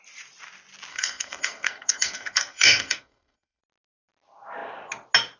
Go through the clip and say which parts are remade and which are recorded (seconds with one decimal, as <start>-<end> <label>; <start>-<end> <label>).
0.0-0.9 recorded; 0.9-3.6 remade; 3.6-5.4 recorded

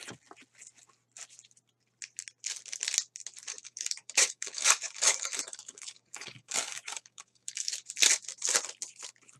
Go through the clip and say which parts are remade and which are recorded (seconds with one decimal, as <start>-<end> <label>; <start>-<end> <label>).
0.0-3.5 recorded; 3.5-7.7 remade; 7.7-9.4 recorded

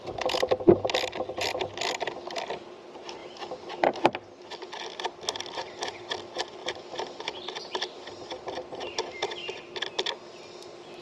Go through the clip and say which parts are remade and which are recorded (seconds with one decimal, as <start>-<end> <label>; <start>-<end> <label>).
0.0-6.6 recorded; 6.6-8.1 remade; 8.1-11.0 recorded

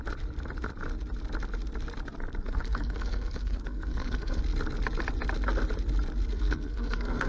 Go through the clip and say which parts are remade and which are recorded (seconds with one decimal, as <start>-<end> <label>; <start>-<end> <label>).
0.0-2.4 recorded; 2.4-4.4 remade; 4.4-6.3 recorded; 6.3-7.3 remade

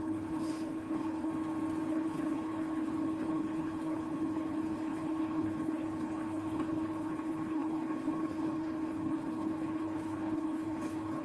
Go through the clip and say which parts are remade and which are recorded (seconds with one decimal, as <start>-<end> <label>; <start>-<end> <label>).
0.0-1.3 remade; 1.3-1.9 recorded; 1.9-11.2 remade